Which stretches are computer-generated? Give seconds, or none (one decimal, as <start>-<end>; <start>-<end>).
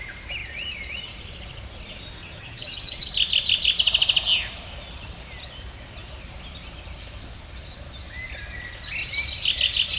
2.2-3.1